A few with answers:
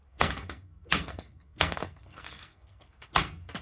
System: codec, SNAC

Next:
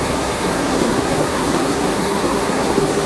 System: codec, SNAC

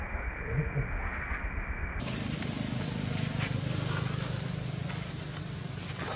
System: none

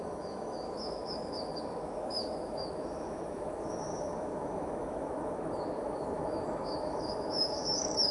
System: autoencoder, DAC-VAE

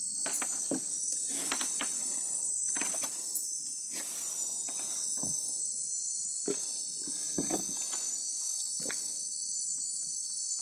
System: none